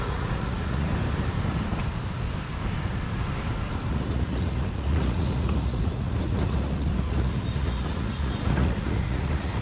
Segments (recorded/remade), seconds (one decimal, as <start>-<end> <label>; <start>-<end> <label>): 0.0-0.9 remade; 0.9-3.9 recorded; 3.9-9.6 remade